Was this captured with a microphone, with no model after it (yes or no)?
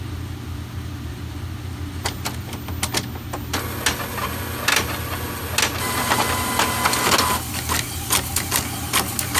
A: yes